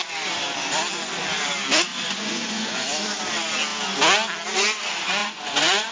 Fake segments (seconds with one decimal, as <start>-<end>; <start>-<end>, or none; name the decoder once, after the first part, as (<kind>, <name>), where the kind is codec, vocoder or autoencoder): 1.9-2.8 (vocoder, Vocos); 5.2-5.9